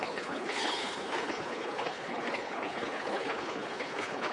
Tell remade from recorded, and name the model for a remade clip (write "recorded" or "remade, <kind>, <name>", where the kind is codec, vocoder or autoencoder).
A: remade, codec, HILCodec